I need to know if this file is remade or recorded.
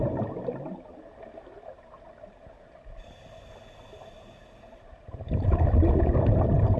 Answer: recorded